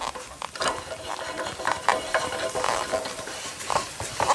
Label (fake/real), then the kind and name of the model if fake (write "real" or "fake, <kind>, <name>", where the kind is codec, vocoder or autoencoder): real